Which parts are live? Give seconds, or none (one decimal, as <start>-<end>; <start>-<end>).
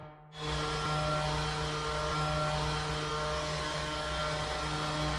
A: 0.0-3.1; 4.2-5.2